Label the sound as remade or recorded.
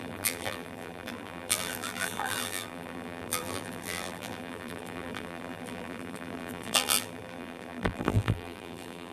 remade